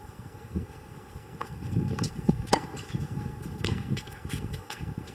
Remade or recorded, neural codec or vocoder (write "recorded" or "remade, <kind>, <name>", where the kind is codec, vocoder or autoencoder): remade, codec, SNAC